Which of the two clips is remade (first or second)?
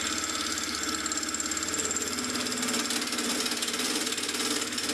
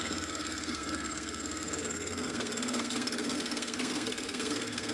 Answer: second